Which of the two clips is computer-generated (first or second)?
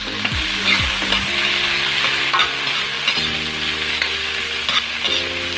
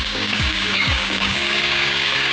second